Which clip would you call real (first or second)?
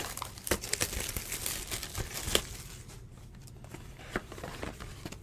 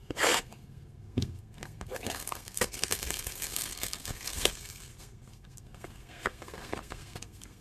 first